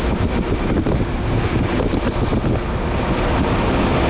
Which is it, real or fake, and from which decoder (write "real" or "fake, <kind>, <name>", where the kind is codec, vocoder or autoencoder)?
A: real